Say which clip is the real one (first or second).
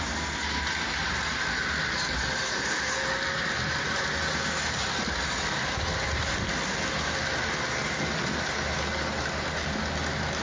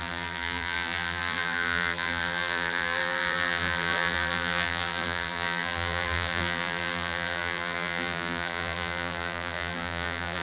first